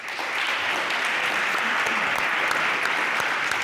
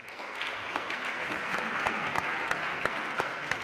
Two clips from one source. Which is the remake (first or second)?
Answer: second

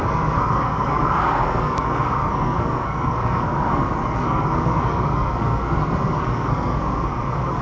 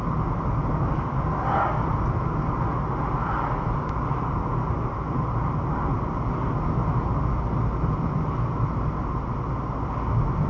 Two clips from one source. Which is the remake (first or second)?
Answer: first